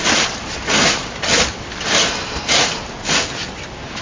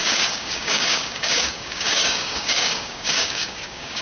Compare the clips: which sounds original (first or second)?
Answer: first